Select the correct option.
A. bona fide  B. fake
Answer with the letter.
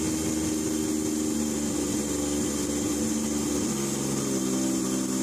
A